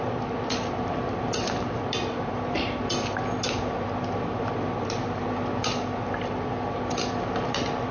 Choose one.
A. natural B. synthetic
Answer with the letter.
A